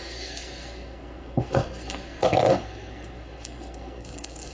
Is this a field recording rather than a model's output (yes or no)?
no